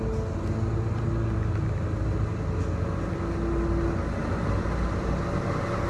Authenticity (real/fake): real